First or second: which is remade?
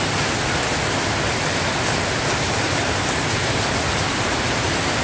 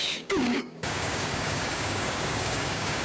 second